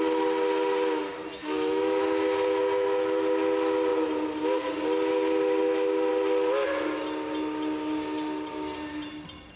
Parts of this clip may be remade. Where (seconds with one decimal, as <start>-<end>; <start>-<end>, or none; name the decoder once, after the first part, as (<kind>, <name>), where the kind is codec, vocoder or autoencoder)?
1.3-2.0 (autoencoder, DAC-VAE)